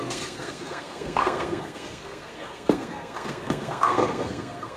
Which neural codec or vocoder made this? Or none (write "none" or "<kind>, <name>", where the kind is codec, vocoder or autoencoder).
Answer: codec, SNAC